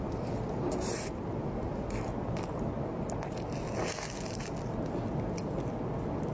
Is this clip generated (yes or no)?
no